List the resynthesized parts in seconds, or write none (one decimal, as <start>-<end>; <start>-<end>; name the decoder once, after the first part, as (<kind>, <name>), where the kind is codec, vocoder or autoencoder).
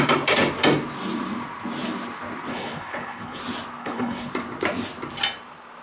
2.5-3.4 (codec, HILCodec); 3.8-4.3